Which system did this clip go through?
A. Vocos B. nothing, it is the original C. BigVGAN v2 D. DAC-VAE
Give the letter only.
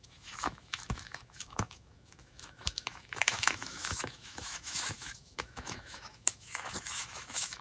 D